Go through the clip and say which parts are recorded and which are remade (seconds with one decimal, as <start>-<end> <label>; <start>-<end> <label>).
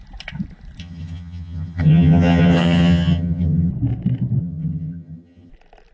0.0-0.8 recorded; 0.8-3.7 remade; 3.7-4.4 recorded; 4.4-5.5 remade; 5.5-5.9 recorded